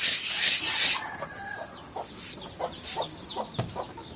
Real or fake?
real